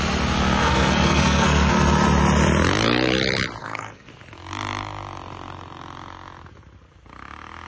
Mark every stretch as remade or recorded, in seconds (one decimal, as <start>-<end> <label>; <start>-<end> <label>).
0.0-0.6 recorded; 0.6-1.7 remade; 1.7-3.6 recorded; 3.6-4.1 remade; 4.1-7.7 recorded